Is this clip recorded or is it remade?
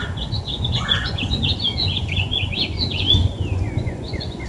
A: remade